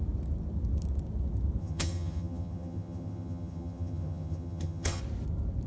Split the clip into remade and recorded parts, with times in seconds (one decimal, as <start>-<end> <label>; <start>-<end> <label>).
0.0-1.6 recorded; 1.6-5.0 remade; 5.0-5.7 recorded